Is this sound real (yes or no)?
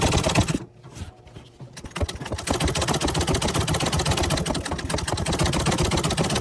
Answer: yes